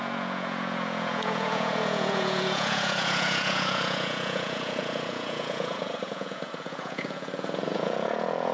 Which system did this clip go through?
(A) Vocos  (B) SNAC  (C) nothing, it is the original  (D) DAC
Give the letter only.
A